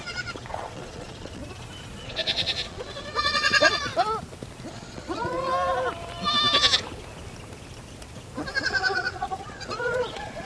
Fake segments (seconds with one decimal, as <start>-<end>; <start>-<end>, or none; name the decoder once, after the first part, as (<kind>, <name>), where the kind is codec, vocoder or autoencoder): 0.0-1.4 (vocoder, Vocos); 2.0-3.9; 4.7-5.5; 8.6-10.5